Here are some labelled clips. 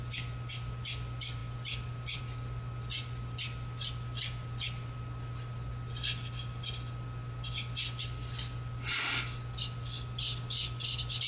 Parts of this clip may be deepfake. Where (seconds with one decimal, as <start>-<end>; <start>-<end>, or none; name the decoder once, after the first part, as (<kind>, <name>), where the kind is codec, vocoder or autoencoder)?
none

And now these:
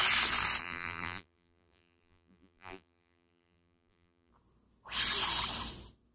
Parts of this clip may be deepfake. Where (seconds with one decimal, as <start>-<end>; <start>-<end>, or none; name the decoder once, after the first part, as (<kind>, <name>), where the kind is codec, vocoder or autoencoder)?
0.6-4.3 (vocoder, BigVGAN v2)

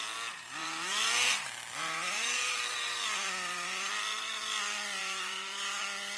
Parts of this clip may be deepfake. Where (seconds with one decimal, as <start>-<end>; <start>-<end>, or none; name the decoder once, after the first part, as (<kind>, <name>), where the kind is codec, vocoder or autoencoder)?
0.6-3.9 (vocoder, BigVGAN v2); 5.0-5.8